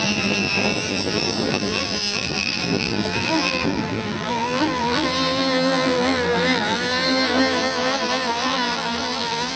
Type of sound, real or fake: fake